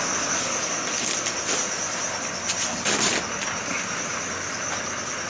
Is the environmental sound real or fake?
real